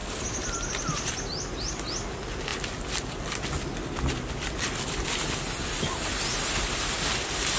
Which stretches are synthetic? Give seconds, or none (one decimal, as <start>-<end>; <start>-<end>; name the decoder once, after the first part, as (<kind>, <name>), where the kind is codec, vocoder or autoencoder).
none